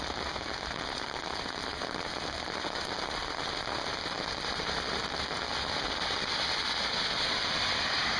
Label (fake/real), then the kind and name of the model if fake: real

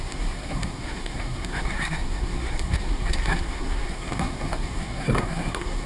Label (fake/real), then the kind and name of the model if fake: fake, codec, SNAC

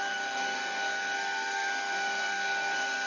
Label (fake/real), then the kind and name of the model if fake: fake, codec, SNAC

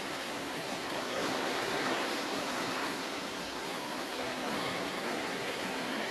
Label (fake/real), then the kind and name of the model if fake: fake, codec, SNAC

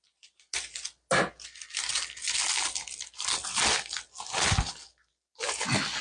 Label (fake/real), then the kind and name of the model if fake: real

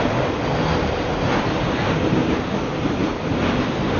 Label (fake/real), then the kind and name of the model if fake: real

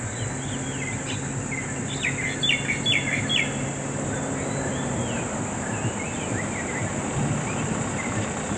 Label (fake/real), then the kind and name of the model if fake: real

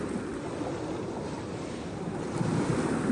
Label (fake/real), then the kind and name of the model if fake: real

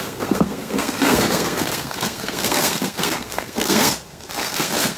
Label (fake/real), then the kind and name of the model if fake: fake, codec, SNAC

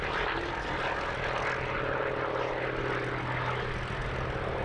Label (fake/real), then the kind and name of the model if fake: real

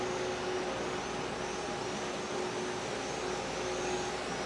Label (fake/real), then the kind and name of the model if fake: real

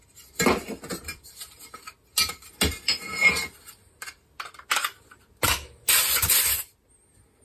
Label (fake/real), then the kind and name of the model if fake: real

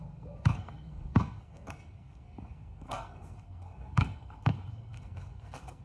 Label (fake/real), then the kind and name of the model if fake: fake, codec, SNAC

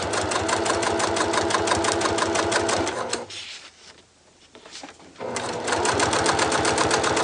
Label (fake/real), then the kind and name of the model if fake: real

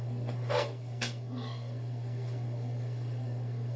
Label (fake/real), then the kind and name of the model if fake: fake, codec, SNAC